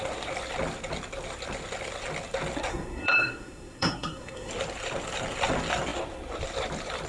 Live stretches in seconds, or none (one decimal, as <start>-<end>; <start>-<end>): 0.0-2.7; 4.5-7.1